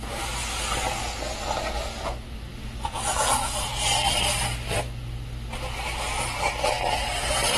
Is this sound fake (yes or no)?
no